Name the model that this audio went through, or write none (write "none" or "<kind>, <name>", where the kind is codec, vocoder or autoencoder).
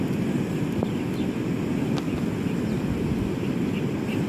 none